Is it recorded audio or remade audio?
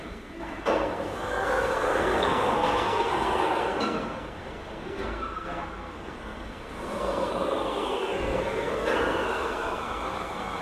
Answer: remade